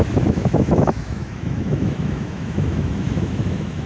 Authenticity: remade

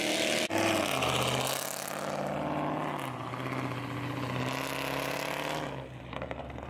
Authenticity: recorded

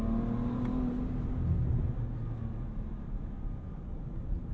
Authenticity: recorded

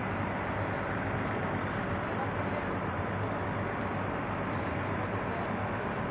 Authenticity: recorded